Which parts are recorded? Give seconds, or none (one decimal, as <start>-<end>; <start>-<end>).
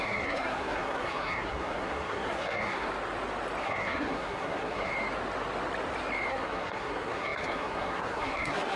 2.9-3.6; 4.9-6.3